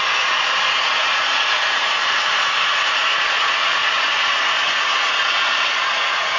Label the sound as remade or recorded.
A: remade